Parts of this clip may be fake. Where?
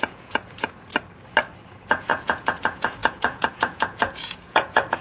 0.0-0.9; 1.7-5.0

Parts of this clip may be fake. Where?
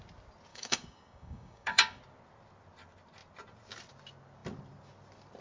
0.5-2.0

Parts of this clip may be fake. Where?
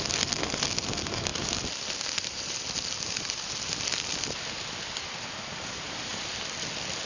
1.3-5.6; 6.1-7.1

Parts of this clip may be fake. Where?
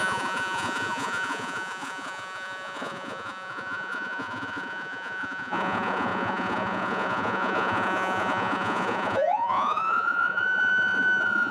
0.0-11.5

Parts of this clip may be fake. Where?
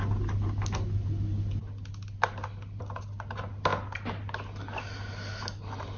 none